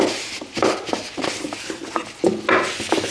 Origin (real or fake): real